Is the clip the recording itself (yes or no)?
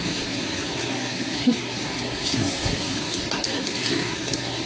no